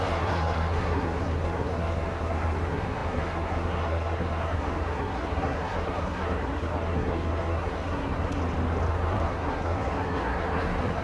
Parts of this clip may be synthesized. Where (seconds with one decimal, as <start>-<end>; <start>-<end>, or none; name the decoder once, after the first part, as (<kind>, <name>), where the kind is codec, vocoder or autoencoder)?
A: 0.0-8.4 (codec, SNAC); 8.9-11.0